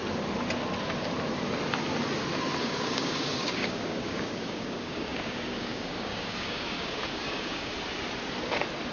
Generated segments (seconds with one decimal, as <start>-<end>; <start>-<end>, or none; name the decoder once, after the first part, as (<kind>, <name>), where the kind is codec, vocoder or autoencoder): 2.6-7.7 (codec, DAC)